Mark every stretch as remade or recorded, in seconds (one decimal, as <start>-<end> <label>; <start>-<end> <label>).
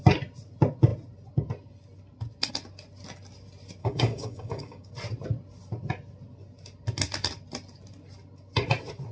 0.0-3.8 recorded; 3.8-4.9 remade; 4.9-9.1 recorded